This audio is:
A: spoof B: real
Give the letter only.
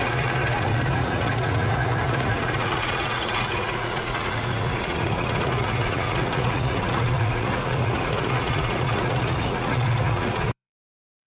A